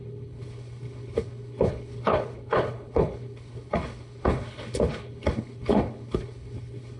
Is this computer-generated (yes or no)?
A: yes